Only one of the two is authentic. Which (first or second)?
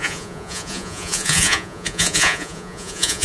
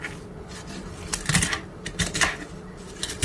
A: second